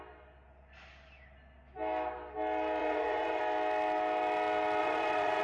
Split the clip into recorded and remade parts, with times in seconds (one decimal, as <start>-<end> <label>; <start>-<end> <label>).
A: 0.0-2.8 recorded; 2.8-3.4 remade; 3.4-4.8 recorded; 4.8-5.4 remade